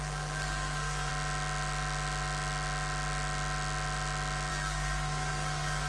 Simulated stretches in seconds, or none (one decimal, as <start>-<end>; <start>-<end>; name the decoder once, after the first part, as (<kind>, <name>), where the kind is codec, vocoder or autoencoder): 0.0-1.1 (codec, SNAC); 4.5-5.9